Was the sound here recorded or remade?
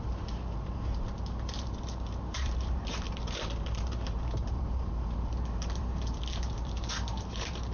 remade